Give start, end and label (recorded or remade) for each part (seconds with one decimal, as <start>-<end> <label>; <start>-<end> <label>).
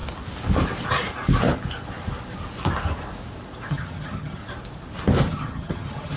0.0-3.7 recorded; 3.7-4.4 remade; 4.4-5.3 recorded; 5.3-6.2 remade